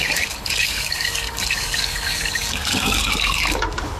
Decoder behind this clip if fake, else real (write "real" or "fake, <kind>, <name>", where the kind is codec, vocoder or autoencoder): fake, codec, DAC